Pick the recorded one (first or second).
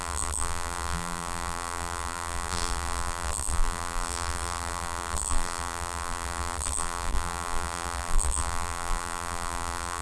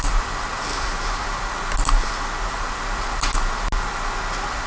second